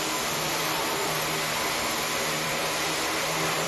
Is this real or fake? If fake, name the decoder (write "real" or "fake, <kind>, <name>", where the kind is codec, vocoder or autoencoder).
fake, vocoder, BigVGAN v2